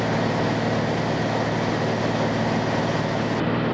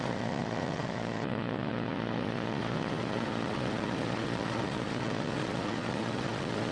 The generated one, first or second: second